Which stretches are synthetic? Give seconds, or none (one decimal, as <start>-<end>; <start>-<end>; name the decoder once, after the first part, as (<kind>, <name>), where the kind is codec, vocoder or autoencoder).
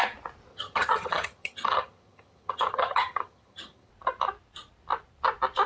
0.5-3.9 (vocoder, HiFi-GAN)